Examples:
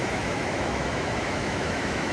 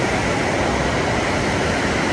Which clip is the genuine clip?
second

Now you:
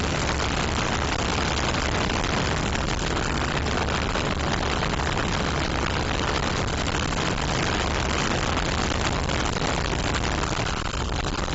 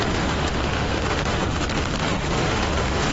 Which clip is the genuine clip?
first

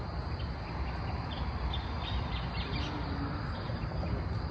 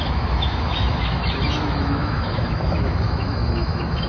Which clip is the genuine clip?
first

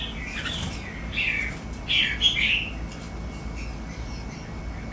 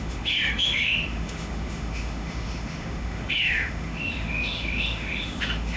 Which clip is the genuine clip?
first